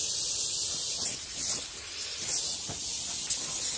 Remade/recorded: recorded